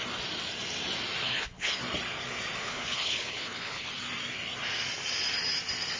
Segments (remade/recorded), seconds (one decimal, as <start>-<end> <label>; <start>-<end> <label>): 0.0-1.3 recorded; 1.3-1.8 remade; 1.8-2.6 recorded; 2.6-3.9 remade; 3.9-6.0 recorded